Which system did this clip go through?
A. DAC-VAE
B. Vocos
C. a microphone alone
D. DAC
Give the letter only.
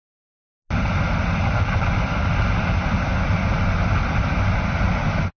C